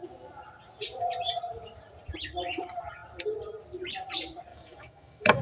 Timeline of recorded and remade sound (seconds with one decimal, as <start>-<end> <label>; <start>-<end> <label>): 0.0-4.5 recorded; 4.5-5.4 remade